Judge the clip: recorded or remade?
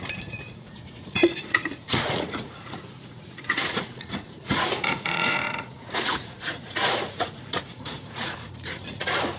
remade